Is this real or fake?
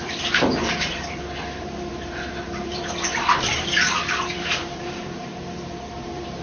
fake